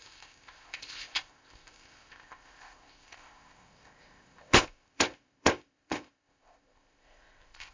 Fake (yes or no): yes